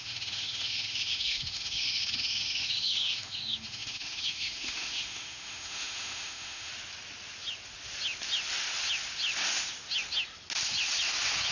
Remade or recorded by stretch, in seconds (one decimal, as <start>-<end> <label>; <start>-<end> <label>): 0.0-6.7 remade; 6.7-11.5 recorded